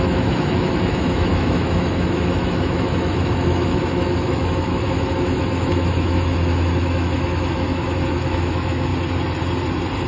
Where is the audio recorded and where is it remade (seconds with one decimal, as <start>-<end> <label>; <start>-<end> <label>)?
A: 0.0-8.9 remade; 8.9-10.1 recorded